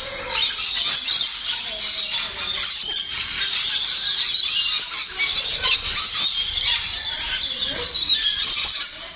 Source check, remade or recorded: recorded